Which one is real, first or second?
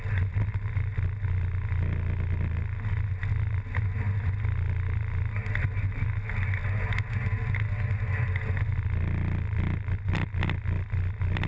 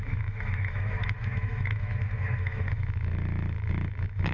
first